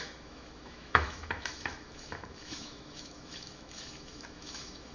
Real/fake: fake